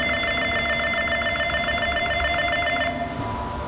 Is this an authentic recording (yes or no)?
yes